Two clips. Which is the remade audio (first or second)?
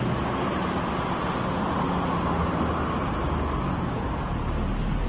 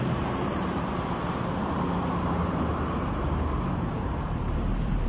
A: second